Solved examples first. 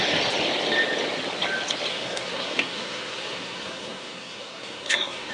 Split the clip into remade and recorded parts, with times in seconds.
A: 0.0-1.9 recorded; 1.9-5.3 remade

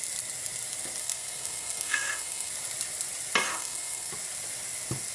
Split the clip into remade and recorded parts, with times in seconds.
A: 0.0-1.0 recorded; 1.0-2.5 remade; 2.5-3.5 recorded; 3.5-4.1 remade; 4.1-5.1 recorded

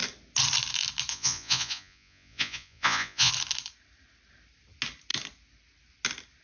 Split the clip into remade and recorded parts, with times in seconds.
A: 0.0-1.1 recorded; 1.1-3.3 remade; 3.3-6.4 recorded

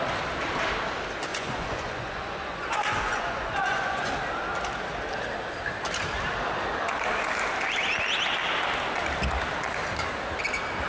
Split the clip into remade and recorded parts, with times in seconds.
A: 0.0-1.3 recorded; 1.3-4.1 remade; 4.1-10.9 recorded

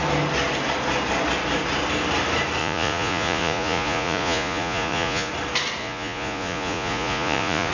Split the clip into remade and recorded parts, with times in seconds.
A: 0.0-2.6 recorded; 2.6-5.3 remade; 5.3-5.8 recorded; 5.8-7.7 remade

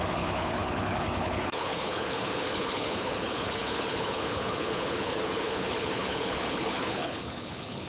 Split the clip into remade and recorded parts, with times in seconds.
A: 0.0-7.9 remade